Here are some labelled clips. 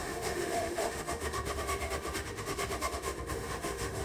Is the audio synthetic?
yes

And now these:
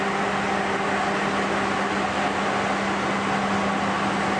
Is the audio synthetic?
no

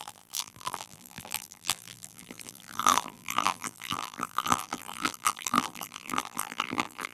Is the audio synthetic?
yes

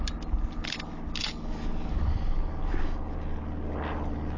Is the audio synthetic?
no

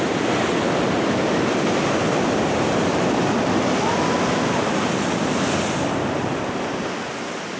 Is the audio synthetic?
no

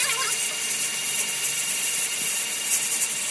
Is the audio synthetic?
no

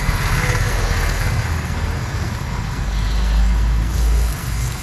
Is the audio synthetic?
yes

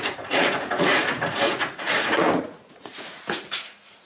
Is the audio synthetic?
yes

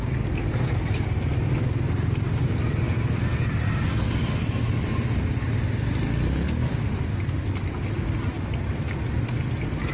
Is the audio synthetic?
no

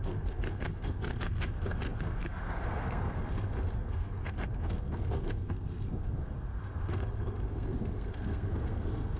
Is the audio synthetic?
yes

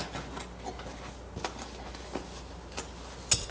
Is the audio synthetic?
no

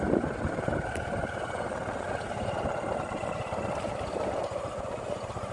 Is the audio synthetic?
no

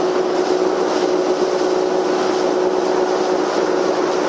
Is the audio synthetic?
no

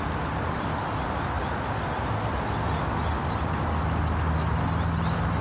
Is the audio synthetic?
no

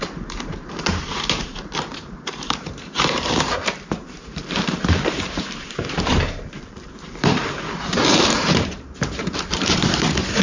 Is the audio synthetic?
yes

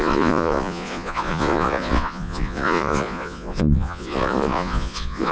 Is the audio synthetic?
yes